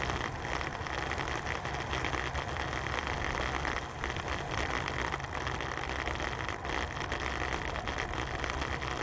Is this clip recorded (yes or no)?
yes